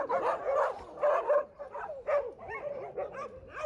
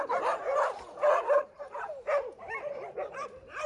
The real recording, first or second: first